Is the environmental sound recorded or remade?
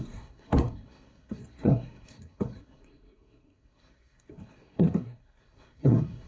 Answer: remade